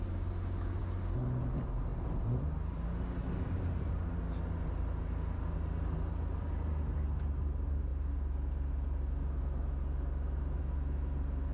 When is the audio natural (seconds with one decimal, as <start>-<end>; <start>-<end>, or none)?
0.0-11.5